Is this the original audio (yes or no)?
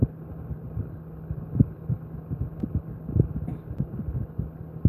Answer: yes